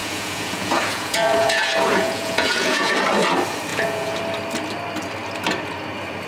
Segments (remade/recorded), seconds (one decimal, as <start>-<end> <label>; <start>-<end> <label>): 0.0-2.9 remade; 2.9-3.7 recorded; 3.7-4.2 remade; 4.2-6.3 recorded